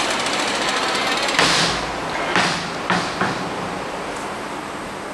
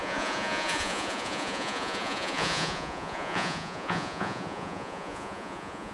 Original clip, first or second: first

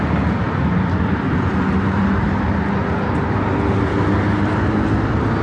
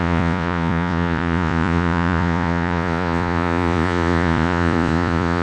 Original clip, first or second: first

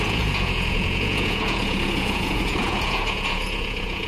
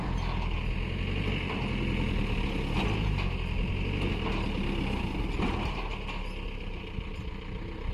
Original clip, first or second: second